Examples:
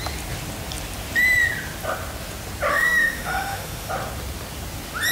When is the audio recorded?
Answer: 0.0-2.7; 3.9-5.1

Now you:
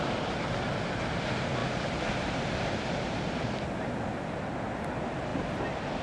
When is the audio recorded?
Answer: 0.0-6.0

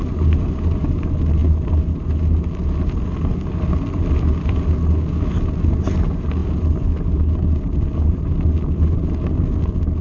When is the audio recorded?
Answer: 0.0-10.0

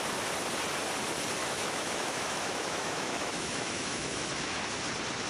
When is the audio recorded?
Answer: 0.0-1.4; 4.6-5.3

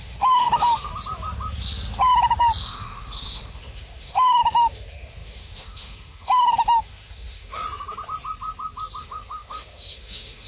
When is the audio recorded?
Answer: 0.9-2.7; 7.6-9.0

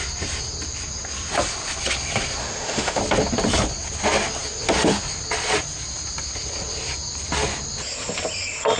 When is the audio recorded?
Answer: 0.0-2.4; 3.0-8.8

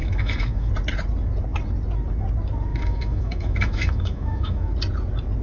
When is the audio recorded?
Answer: 0.7-2.7; 4.7-5.4

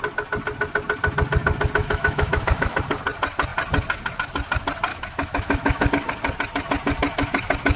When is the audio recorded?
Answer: 0.0-1.8; 2.8-4.9; 5.9-7.8